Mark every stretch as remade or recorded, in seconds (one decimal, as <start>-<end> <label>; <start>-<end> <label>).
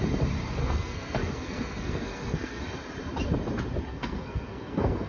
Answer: 0.0-0.6 recorded; 0.6-2.6 remade; 2.6-3.9 recorded; 3.9-5.1 remade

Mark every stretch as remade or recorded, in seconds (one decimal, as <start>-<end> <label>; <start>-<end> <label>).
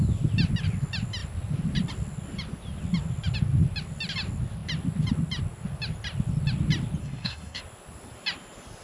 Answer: 0.0-7.0 recorded; 7.0-7.6 remade; 7.6-8.8 recorded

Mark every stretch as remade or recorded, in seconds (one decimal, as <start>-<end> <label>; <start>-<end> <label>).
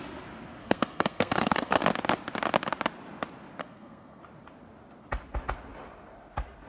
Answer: 0.0-0.6 recorded; 0.6-1.8 remade; 1.8-3.6 recorded; 3.6-4.2 remade; 4.2-6.7 recorded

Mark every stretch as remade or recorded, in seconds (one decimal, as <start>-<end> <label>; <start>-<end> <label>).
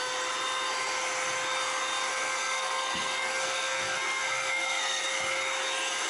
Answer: 0.0-2.1 recorded; 2.1-5.0 remade; 5.0-6.1 recorded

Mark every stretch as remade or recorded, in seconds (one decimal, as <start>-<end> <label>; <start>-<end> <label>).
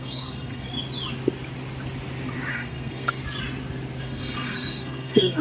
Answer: 0.0-0.7 remade; 0.7-2.5 recorded; 2.5-3.2 remade; 3.2-4.0 recorded; 4.0-5.4 remade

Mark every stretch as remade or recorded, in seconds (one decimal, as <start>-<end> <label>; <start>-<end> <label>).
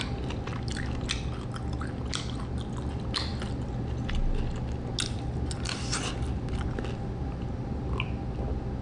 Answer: 0.0-8.8 recorded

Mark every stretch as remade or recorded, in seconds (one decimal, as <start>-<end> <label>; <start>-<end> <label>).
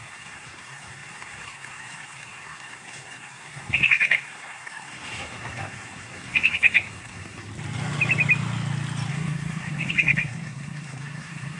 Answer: 0.0-7.5 remade; 7.5-9.1 recorded; 9.1-11.6 remade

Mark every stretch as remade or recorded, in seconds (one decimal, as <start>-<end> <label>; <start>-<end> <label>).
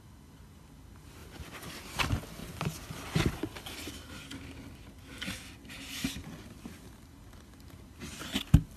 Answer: 0.0-8.8 recorded